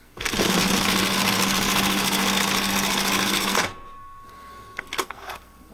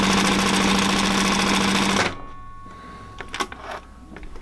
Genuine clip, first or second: second